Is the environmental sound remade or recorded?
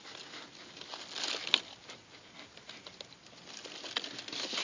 recorded